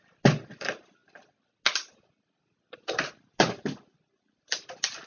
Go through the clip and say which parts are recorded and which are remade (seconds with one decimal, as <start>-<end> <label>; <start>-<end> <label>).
0.0-5.1 recorded

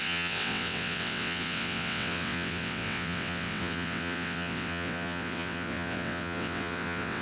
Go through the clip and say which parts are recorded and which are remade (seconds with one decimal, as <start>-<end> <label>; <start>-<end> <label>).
0.0-7.2 remade

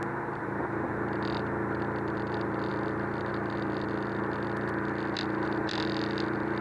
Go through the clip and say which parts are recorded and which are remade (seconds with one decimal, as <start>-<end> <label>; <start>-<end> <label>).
0.0-6.6 recorded